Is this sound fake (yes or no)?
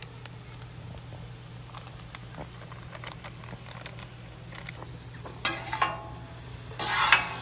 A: no